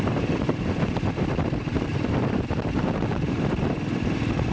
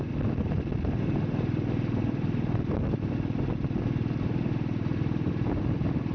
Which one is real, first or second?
second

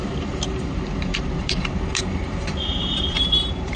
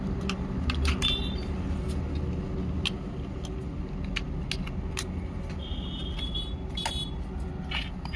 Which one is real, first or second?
second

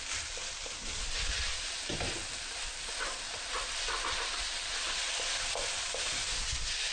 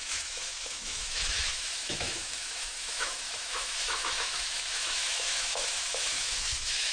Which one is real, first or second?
first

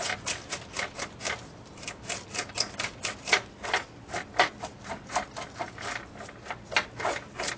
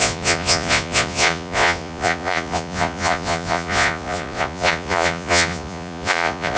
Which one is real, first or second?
first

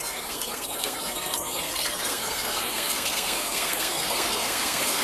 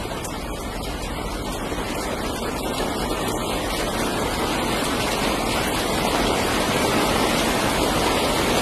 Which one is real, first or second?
second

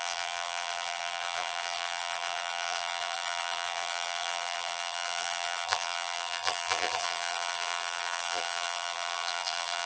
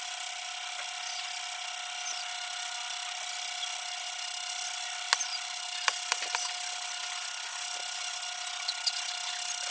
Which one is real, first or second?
second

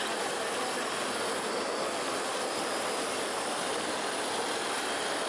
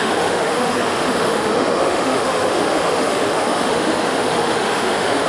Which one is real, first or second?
first